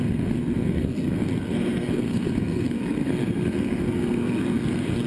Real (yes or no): no